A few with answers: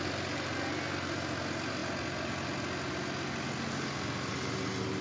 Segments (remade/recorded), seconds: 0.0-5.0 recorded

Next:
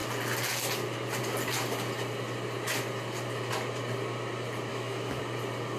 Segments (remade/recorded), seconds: 0.0-4.7 recorded; 4.7-5.2 remade; 5.2-5.8 recorded